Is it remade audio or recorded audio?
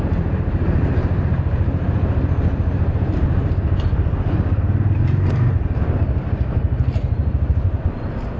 remade